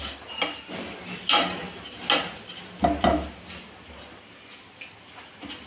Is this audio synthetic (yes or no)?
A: no